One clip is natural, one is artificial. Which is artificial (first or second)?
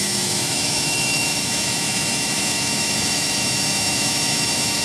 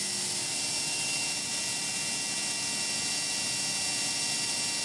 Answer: first